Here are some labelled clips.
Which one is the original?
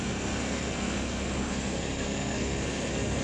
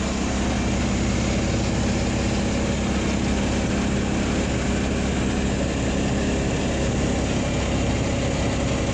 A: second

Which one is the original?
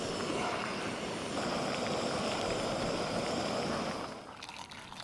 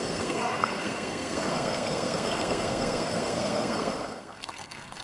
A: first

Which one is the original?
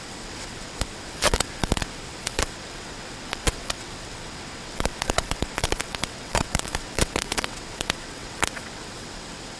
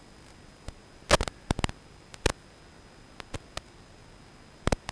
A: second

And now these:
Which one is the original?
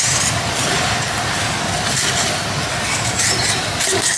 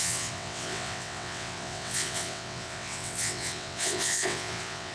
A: first